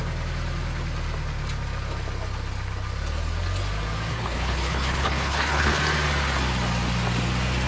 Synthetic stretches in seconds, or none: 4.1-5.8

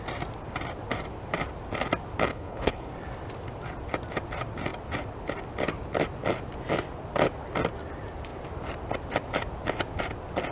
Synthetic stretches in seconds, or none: 2.3-2.9

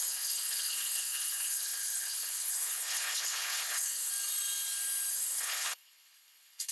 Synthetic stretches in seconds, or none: 0.0-4.1; 5.1-6.7